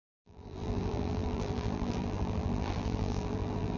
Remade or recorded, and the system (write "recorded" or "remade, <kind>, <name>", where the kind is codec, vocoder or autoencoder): remade, vocoder, BigVGAN v2